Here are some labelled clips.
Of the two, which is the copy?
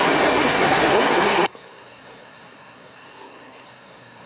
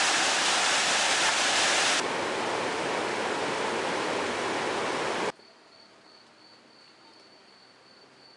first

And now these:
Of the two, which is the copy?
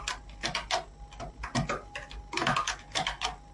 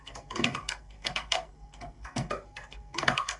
second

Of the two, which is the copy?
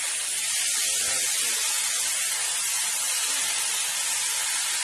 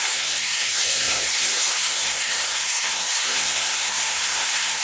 second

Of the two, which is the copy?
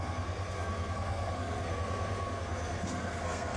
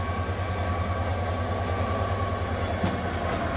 first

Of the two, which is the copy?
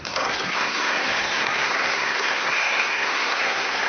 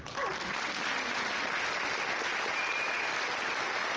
first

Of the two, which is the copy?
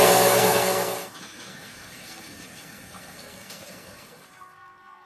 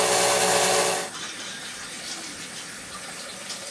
first